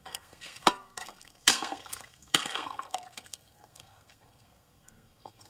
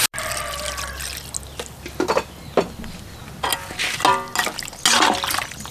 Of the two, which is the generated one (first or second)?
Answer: first